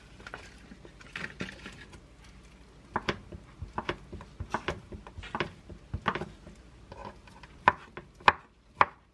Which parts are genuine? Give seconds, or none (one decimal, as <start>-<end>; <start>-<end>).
0.0-9.1

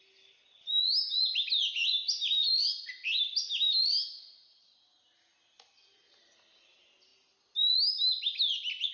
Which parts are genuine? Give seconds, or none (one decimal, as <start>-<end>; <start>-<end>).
0.0-8.9